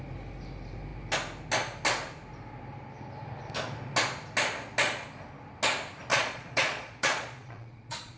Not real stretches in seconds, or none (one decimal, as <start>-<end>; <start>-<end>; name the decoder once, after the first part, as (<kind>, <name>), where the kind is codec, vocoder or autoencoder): 6.1-8.2 (vocoder, Vocos)